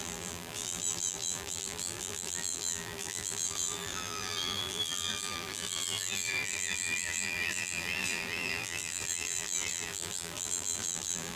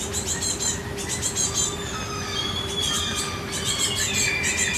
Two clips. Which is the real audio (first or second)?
second